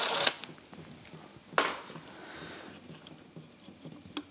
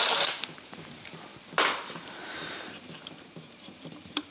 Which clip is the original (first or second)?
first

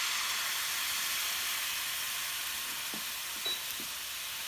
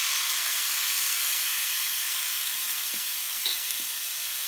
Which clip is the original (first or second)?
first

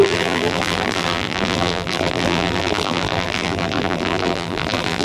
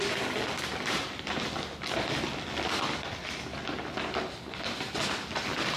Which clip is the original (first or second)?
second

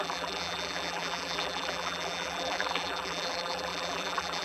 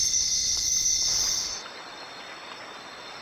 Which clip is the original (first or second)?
second